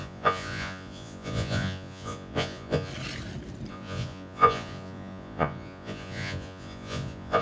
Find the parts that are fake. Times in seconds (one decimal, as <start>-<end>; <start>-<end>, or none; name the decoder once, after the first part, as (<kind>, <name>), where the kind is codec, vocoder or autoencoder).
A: 0.0-2.9 (vocoder, Vocos); 3.7-7.4